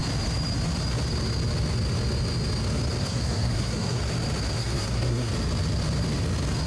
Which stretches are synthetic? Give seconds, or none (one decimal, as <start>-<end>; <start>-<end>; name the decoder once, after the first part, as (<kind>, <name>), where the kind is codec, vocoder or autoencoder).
3.0-4.0 (codec, SNAC); 4.6-5.3